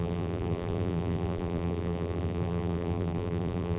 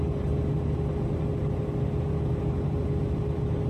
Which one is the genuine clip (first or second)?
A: second